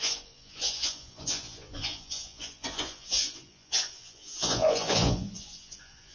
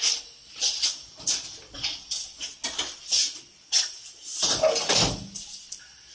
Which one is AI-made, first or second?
first